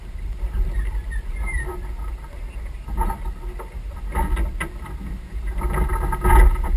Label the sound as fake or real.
real